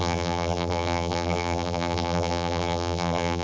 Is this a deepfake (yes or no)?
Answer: yes